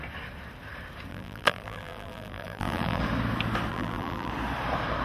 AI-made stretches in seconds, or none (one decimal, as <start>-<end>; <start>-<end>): 1.1-3.0; 3.7-4.3